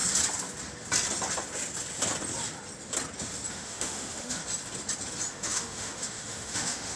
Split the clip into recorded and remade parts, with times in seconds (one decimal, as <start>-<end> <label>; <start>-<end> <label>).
0.0-3.5 recorded; 3.5-4.4 remade; 4.4-5.3 recorded; 5.3-7.0 remade